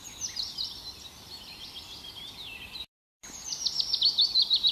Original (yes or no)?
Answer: no